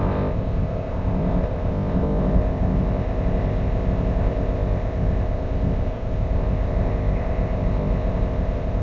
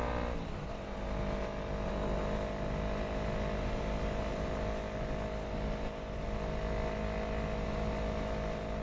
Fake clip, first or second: first